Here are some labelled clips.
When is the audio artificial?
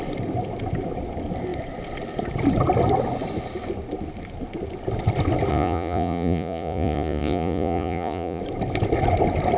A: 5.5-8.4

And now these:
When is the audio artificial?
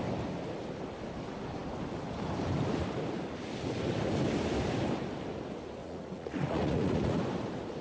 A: 5.8-7.2